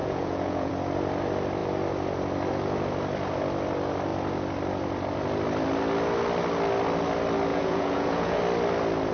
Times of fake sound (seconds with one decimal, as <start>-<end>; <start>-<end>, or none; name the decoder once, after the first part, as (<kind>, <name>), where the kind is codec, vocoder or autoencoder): 0.0-0.7 (vocoder, Vocos); 7.5-8.4